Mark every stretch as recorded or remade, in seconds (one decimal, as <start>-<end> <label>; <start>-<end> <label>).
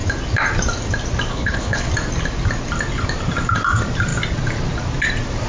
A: 0.0-1.3 recorded; 1.3-1.9 remade; 1.9-5.5 recorded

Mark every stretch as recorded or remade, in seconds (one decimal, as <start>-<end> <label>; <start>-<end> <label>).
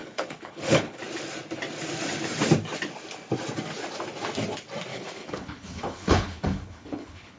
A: 0.0-1.0 remade; 1.0-4.9 recorded; 4.9-7.4 remade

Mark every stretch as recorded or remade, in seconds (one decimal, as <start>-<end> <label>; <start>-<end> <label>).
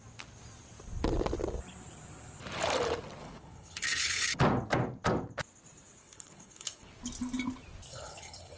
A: 0.0-3.2 recorded; 3.2-4.4 remade; 4.4-6.0 recorded; 6.0-6.9 remade; 6.9-7.9 recorded; 7.9-8.6 remade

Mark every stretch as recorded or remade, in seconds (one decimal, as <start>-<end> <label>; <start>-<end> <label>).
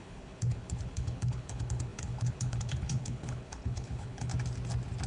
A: 0.0-4.3 remade; 4.3-5.1 recorded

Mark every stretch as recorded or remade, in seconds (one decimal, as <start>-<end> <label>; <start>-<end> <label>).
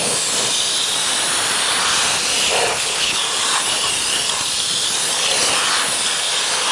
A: 0.0-2.7 recorded; 2.7-3.2 remade; 3.2-6.7 recorded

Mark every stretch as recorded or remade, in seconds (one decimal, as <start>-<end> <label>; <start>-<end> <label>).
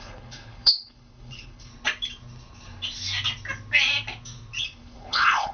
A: 0.0-1.7 remade; 1.7-4.6 recorded; 4.6-5.5 remade